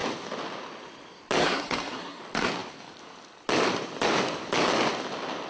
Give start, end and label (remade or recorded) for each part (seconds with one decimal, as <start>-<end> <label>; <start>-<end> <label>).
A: 0.0-1.4 recorded; 1.4-2.2 remade; 2.2-5.5 recorded